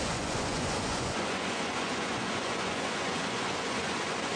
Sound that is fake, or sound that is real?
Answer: fake